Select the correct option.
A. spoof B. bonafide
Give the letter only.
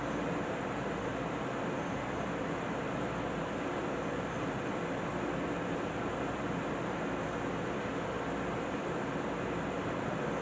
B